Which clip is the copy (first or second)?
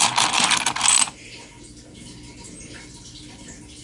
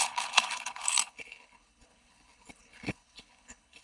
second